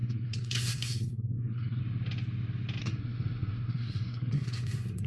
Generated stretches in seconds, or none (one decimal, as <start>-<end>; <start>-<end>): 0.0-1.8; 2.8-5.1